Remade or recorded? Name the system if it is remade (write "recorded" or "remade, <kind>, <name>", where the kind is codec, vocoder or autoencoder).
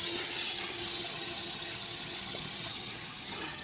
remade, vocoder, HiFi-GAN